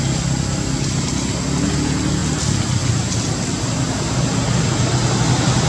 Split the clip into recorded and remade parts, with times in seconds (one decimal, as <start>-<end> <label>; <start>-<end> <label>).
0.0-5.7 recorded

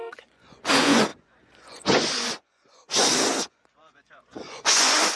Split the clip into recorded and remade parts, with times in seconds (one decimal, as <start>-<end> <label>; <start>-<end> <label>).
0.0-5.1 remade

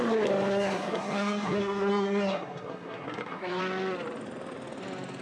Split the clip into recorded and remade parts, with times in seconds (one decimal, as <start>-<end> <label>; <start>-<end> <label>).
0.0-0.5 recorded; 0.5-3.6 remade; 3.6-5.2 recorded

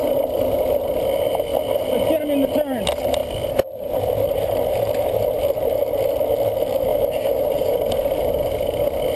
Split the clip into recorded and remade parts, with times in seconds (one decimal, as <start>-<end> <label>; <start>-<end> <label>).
0.0-9.2 recorded